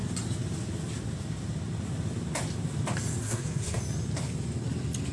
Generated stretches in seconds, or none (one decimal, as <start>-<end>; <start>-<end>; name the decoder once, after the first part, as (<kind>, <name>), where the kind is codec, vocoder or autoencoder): 3.2-3.8 (codec, SNAC)